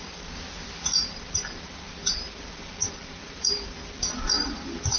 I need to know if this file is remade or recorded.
recorded